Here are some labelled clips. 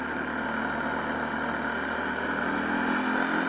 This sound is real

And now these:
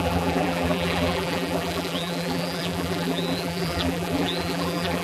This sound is fake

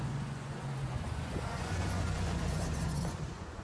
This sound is fake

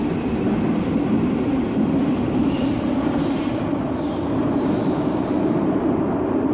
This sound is fake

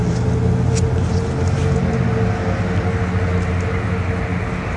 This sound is real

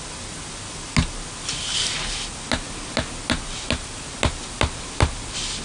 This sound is real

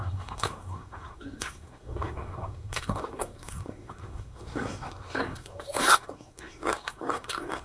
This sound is fake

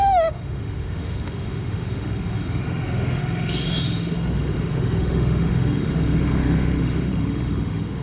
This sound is fake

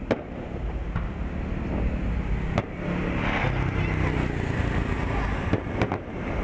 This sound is real